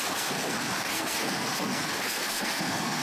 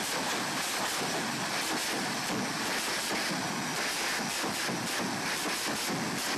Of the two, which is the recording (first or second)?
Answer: second